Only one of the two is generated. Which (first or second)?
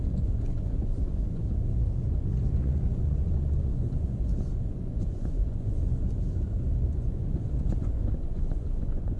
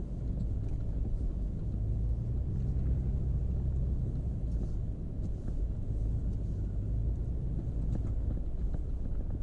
first